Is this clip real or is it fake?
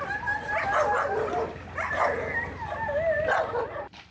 real